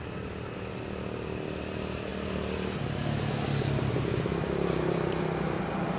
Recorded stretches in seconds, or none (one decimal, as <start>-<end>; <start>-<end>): 0.0-6.0